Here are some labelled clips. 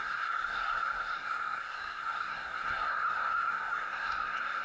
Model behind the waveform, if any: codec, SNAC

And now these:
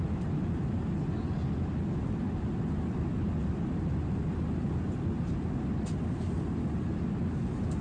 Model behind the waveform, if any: none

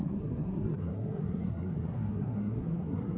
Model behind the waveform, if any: codec, SNAC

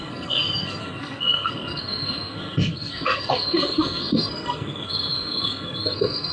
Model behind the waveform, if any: codec, SNAC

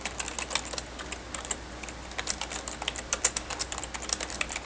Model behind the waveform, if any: none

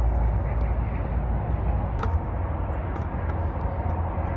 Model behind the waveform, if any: none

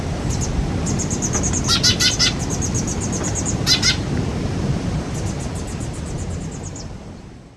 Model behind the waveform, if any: none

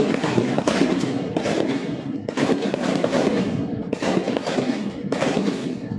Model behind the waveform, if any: codec, SNAC